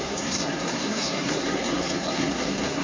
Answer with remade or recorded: remade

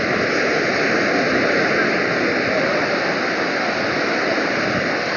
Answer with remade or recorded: recorded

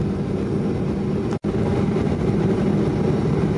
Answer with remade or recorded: recorded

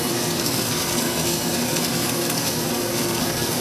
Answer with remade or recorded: remade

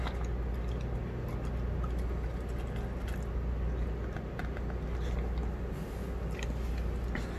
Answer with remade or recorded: recorded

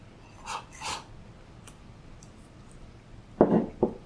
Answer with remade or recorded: recorded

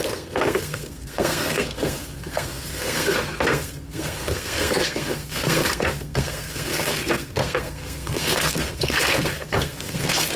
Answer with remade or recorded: remade